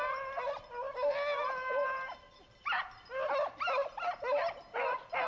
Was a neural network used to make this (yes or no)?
no